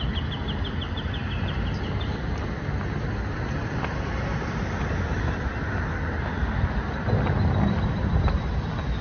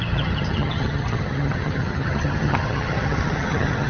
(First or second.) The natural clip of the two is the first